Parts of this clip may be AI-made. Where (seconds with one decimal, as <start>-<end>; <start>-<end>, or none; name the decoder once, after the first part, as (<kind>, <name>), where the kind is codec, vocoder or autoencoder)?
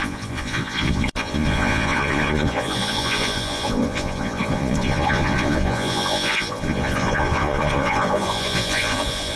0.0-9.4 (vocoder, Vocos)